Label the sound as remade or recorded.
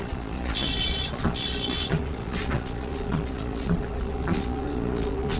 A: remade